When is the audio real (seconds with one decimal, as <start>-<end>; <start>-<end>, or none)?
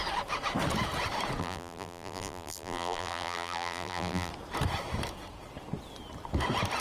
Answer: 0.0-1.4; 4.3-6.8